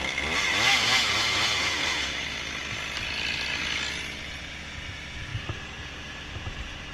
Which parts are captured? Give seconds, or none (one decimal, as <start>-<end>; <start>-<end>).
0.0-0.7; 2.2-6.9